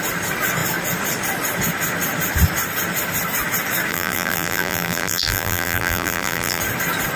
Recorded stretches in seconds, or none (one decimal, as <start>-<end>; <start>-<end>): 0.0-3.9; 6.6-7.2